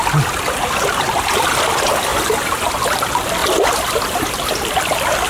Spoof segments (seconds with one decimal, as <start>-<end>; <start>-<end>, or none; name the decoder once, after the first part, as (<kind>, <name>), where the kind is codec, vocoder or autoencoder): 2.1-2.7 (vocoder, BigVGAN v2); 3.4-4.3